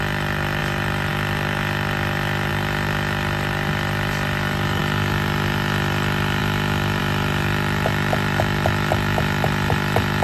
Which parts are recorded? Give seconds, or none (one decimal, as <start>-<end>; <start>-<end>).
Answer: 0.0-10.2